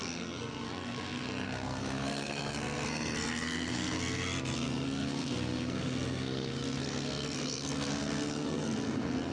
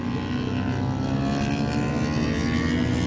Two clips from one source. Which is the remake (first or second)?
first